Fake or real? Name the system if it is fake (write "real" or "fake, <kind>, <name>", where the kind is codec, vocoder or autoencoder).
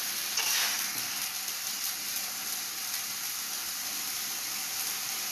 real